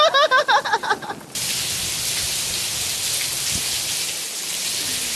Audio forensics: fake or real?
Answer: real